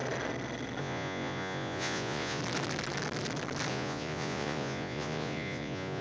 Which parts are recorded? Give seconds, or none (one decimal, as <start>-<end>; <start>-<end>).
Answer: 0.0-0.8; 2.4-3.7